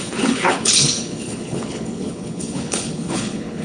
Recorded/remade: remade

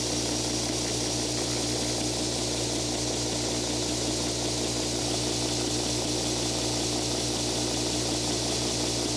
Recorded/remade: recorded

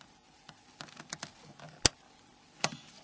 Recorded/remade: recorded